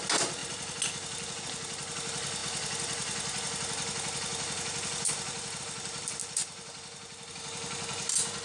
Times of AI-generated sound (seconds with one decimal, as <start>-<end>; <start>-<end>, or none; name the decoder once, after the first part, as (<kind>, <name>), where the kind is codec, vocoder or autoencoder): none